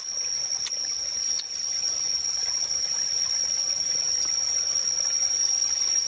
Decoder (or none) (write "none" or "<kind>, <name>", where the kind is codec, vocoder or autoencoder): none